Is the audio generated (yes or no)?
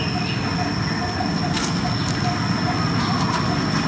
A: no